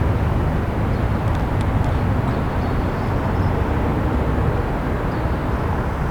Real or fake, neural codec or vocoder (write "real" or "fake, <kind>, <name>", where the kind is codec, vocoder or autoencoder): real